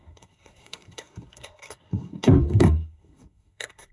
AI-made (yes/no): yes